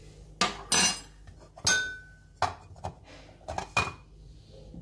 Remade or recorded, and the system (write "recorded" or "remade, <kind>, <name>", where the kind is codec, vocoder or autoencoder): recorded